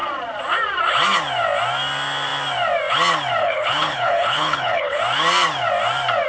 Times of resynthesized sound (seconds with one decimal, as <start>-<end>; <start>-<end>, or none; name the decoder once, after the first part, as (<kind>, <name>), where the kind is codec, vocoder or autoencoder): 3.4-5.0 (codec, HILCodec)